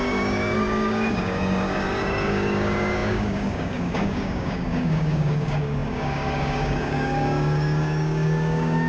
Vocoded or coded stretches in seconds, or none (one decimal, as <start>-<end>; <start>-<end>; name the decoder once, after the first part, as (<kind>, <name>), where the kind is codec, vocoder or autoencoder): 0.0-8.9 (codec, DAC)